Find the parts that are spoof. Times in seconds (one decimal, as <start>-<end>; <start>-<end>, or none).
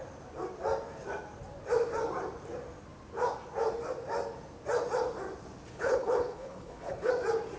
5.7-7.1